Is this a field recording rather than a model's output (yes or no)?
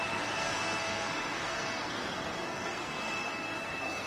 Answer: no